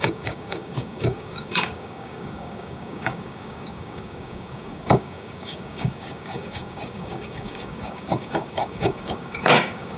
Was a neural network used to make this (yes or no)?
yes